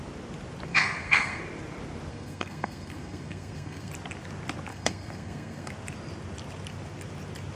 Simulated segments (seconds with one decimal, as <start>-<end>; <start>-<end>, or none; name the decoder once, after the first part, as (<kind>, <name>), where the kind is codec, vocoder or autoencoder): 0.7-1.4 (codec, SNAC); 2.1-3.9; 4.7-5.7